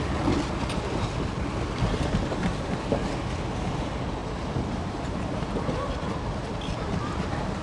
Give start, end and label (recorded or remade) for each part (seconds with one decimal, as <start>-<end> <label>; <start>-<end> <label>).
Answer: 0.0-4.2 recorded; 4.2-6.9 remade; 6.9-7.6 recorded